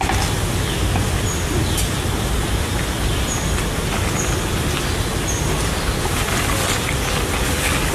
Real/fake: real